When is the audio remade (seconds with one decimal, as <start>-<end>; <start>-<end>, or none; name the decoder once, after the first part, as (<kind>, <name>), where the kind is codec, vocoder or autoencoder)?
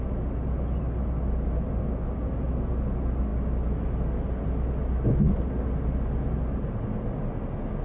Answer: none